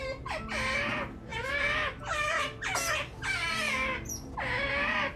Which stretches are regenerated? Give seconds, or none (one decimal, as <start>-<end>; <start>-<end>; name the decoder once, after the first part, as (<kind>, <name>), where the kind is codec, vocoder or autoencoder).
none